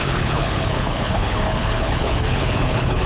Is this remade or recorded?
remade